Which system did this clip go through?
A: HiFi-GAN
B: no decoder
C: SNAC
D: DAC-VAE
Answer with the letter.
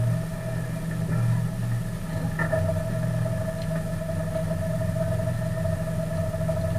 B